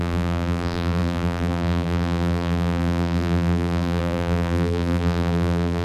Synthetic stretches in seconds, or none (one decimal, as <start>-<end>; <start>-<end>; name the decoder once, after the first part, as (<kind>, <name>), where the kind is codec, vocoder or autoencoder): 0.0-5.8 (vocoder, BigVGAN v2)